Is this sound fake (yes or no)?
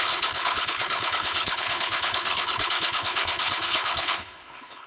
yes